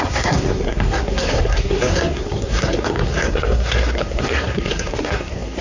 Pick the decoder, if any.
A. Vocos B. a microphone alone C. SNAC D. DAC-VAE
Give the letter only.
C